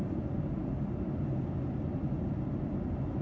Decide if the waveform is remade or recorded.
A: recorded